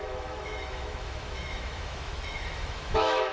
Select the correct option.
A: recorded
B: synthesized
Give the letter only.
B